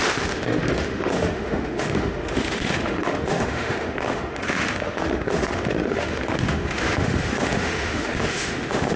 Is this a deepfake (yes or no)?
yes